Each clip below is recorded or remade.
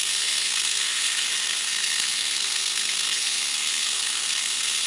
remade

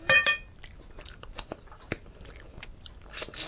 remade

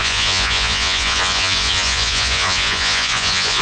remade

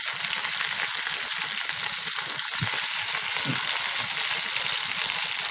recorded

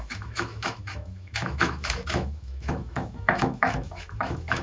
remade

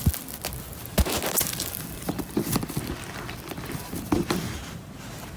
recorded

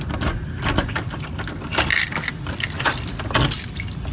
recorded